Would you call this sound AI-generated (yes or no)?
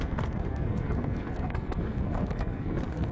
yes